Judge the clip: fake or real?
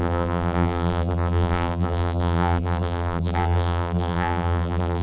fake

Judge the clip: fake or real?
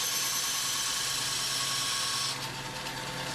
real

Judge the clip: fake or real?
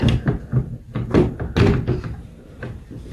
real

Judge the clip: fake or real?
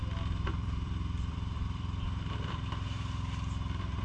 fake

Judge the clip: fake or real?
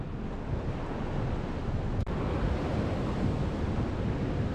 real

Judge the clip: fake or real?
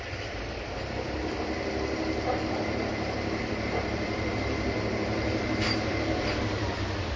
fake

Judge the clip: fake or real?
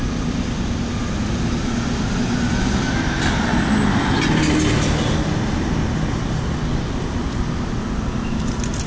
real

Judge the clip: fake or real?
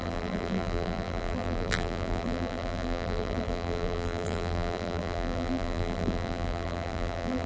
fake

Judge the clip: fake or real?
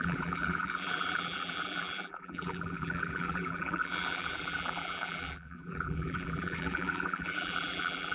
fake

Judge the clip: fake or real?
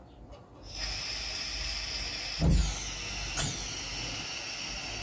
real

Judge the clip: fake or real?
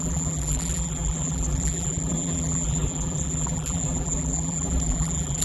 fake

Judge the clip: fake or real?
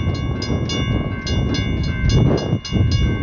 real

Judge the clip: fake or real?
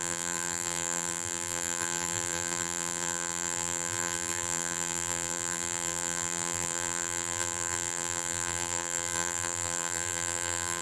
fake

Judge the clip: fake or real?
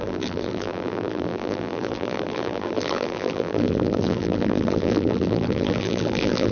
fake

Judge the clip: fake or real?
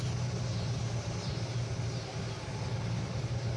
real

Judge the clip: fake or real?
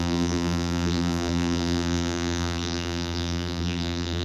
fake